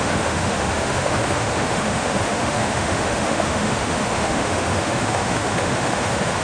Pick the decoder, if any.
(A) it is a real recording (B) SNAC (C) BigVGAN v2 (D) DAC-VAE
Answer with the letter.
D